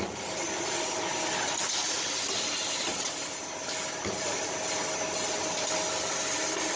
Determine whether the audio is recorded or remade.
recorded